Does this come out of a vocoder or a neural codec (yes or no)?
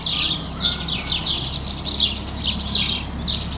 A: no